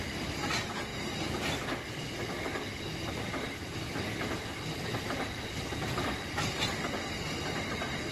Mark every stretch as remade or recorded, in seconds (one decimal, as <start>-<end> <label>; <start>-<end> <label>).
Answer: 0.0-8.1 recorded